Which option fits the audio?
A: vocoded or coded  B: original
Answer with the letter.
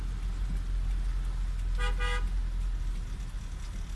B